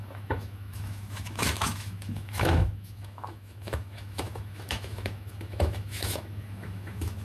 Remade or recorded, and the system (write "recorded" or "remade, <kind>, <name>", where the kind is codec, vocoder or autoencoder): remade, autoencoder, DAC-VAE